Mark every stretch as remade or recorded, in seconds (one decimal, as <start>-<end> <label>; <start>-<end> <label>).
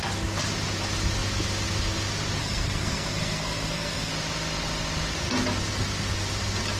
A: 0.0-2.4 recorded; 2.4-4.1 remade; 4.1-6.8 recorded